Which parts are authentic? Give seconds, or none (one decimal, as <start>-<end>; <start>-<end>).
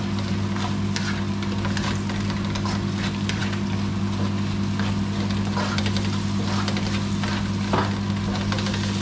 0.0-9.0